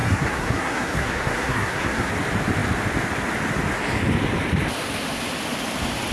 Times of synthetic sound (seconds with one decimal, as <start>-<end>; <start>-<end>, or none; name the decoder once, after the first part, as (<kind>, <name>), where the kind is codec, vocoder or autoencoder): 0.0-2.1 (codec, SNAC)